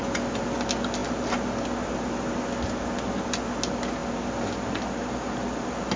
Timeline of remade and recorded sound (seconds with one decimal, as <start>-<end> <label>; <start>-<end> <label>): 0.0-6.0 recorded